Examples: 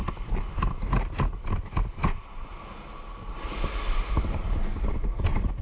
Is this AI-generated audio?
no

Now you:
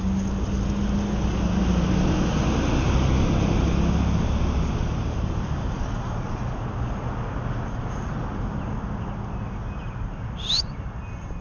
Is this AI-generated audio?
no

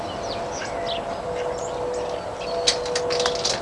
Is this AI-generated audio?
no